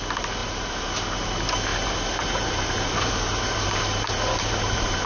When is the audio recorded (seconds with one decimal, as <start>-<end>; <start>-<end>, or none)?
0.0-0.4; 0.9-1.7